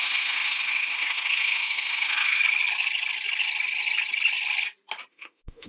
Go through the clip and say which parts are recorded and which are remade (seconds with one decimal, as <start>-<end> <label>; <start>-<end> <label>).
0.0-2.4 remade; 2.4-5.1 recorded; 5.1-5.7 remade